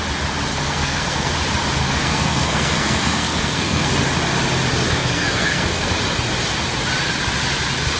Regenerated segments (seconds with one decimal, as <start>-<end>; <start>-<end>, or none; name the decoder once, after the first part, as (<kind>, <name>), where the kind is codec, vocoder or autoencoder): 0.5-1.3 (codec, SNAC); 1.8-3.9; 5.0-5.9